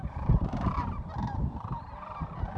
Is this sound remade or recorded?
remade